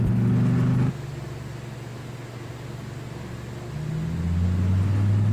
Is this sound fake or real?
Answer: real